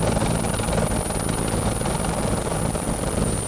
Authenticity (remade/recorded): recorded